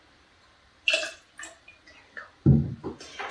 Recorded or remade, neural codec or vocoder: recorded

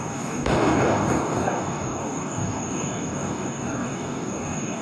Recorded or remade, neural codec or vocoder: remade, codec, DAC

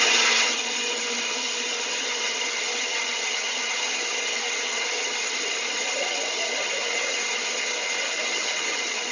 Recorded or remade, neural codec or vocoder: remade, vocoder, HiFi-GAN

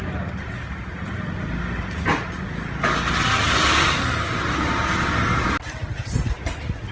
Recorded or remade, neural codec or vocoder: recorded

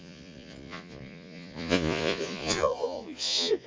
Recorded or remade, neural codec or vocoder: remade, vocoder, Vocos